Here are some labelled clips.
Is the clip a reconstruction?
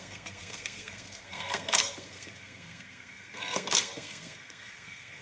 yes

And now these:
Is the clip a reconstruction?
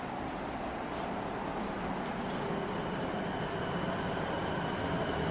no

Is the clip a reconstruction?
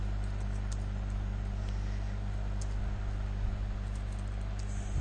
no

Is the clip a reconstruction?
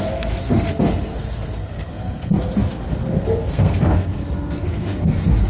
yes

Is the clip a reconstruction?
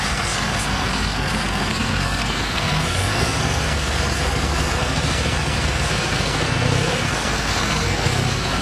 yes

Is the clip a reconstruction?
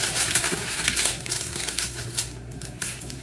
yes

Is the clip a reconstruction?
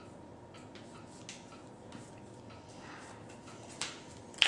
no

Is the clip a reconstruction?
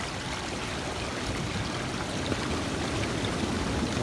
no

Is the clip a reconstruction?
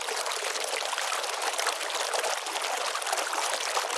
no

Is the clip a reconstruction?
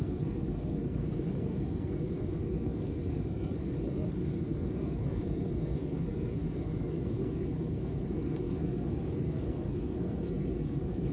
yes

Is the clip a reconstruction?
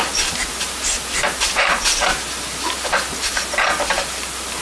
no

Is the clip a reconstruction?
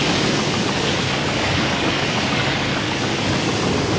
yes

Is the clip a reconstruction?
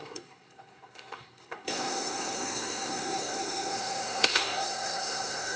yes